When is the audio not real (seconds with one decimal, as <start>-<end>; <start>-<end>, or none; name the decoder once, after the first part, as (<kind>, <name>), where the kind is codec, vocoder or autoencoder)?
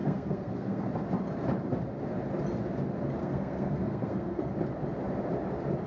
0.0-0.9 (codec, SNAC); 3.2-4.4